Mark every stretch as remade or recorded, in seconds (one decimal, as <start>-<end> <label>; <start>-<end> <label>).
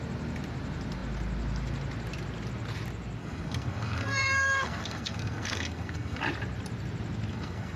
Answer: 0.0-3.2 recorded; 3.2-6.2 remade; 6.2-7.3 recorded; 7.3-7.8 remade